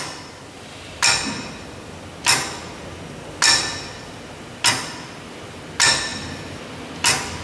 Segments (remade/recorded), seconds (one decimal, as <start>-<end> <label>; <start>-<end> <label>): 0.0-6.1 recorded; 6.1-6.6 remade; 6.6-7.4 recorded